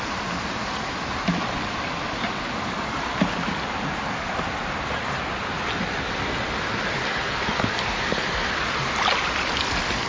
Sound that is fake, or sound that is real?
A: real